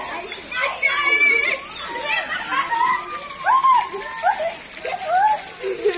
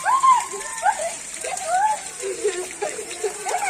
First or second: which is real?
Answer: first